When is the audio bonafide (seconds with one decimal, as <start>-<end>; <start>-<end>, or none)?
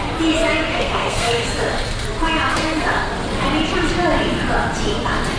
0.0-0.6; 1.5-2.5; 3.1-5.4